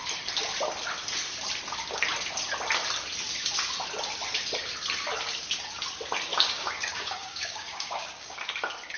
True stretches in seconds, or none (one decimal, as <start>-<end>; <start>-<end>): 0.0-6.3; 8.4-9.0